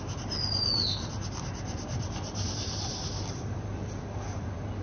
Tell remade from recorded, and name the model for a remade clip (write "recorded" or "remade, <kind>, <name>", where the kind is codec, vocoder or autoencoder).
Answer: recorded